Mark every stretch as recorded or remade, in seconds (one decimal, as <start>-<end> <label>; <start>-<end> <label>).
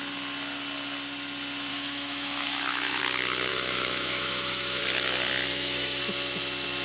0.0-1.7 recorded; 1.7-3.0 remade; 3.0-3.5 recorded; 3.5-4.8 remade; 4.8-5.5 recorded; 5.5-6.0 remade; 6.0-6.8 recorded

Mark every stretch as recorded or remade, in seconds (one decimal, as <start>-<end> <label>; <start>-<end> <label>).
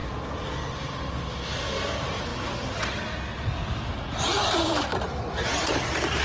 0.0-6.2 recorded